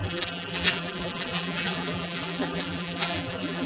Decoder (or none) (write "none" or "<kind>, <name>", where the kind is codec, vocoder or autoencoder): vocoder, BigVGAN v2